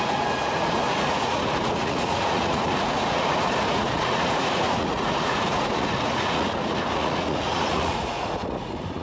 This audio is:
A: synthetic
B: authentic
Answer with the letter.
A